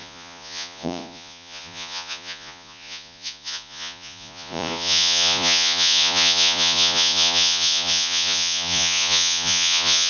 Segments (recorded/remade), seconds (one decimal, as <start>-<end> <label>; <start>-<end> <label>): 0.0-10.1 remade